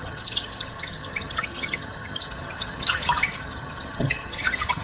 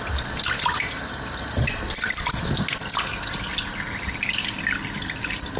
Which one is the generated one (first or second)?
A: first